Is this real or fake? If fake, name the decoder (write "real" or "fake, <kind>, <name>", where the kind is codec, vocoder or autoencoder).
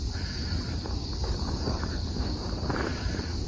fake, vocoder, BigVGAN v2